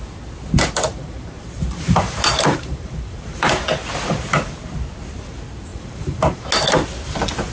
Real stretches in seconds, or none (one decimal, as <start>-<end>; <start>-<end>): 0.0-0.9; 3.5-5.7; 6.4-7.5